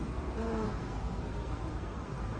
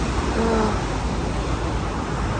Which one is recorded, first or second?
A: second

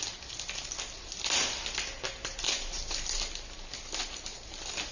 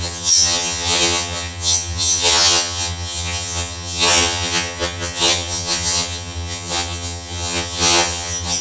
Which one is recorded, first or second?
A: first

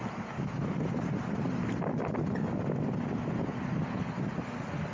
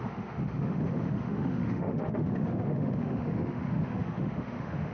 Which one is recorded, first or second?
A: first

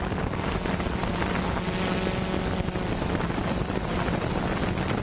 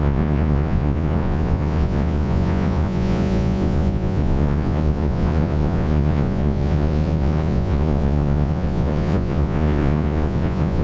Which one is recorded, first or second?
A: first